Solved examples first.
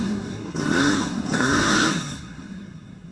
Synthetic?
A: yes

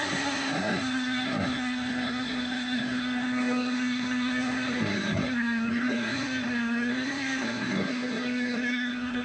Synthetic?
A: yes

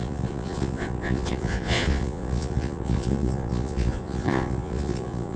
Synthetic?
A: yes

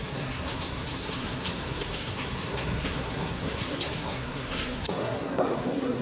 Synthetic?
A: yes